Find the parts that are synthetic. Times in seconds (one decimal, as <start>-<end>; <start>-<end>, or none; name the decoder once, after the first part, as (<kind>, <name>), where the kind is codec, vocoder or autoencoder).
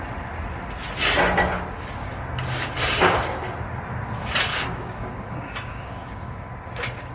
2.0-3.2 (codec, DAC); 4.5-6.5